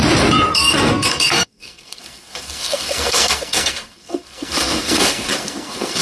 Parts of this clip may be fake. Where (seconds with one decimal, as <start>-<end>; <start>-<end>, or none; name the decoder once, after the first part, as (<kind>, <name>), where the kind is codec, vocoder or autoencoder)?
0.5-6.0 (codec, SNAC)